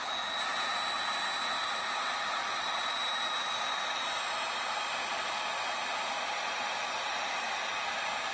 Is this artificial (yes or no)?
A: no